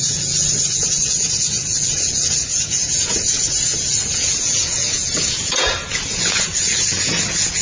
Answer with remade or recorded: remade